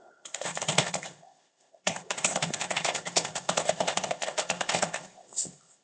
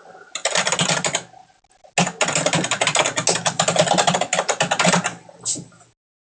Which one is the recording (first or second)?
second